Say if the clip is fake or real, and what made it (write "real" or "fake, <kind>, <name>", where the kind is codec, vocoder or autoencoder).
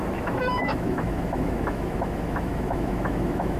fake, autoencoder, DAC-VAE